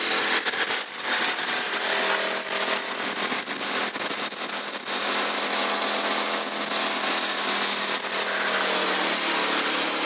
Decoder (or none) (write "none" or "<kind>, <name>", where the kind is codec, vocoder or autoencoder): none